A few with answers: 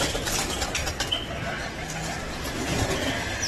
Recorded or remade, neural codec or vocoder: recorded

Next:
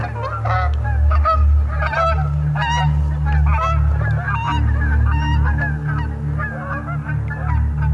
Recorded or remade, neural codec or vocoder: recorded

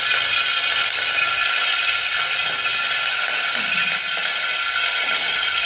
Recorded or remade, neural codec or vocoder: recorded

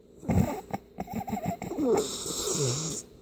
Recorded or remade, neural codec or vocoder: remade, vocoder, BigVGAN v2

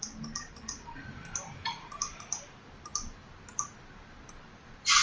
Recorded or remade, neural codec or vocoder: remade, vocoder, BigVGAN v2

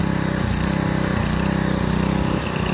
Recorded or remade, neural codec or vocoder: recorded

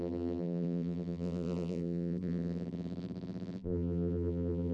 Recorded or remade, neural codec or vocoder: remade, vocoder, BigVGAN v2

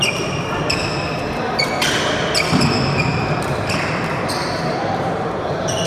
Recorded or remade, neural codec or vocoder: remade, vocoder, BigVGAN v2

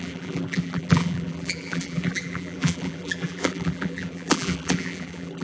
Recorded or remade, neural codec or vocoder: remade, vocoder, BigVGAN v2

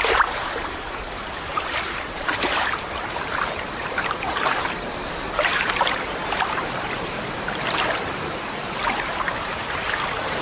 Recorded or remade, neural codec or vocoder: remade, vocoder, BigVGAN v2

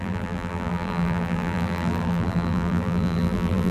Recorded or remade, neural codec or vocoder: remade, vocoder, BigVGAN v2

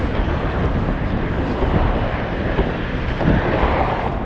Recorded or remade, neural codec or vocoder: remade, vocoder, BigVGAN v2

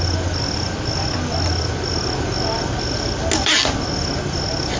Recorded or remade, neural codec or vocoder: recorded